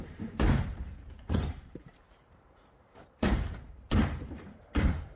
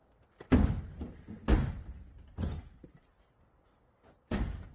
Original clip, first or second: second